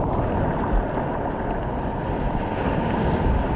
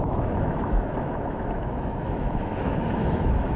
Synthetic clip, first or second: second